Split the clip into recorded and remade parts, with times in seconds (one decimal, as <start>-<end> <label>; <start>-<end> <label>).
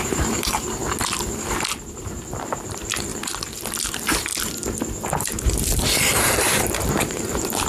0.0-0.8 remade; 0.8-1.8 recorded; 1.8-3.1 remade; 3.1-3.8 recorded; 3.8-4.3 remade; 4.3-5.1 recorded; 5.1-7.7 remade